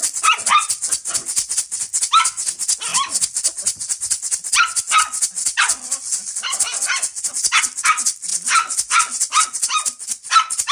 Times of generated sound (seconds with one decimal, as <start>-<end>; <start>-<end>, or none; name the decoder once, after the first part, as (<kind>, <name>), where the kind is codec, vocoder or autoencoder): none